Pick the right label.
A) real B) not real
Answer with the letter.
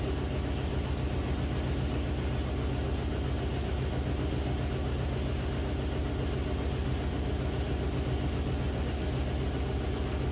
A